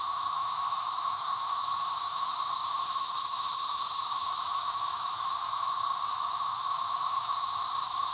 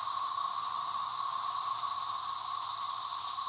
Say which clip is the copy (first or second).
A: first